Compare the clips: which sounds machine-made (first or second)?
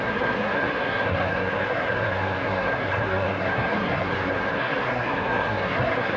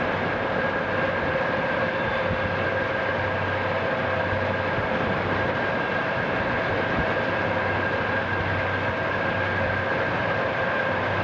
first